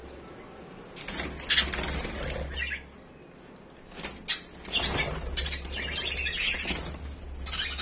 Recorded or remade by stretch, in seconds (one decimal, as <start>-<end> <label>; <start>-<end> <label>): 0.0-7.8 recorded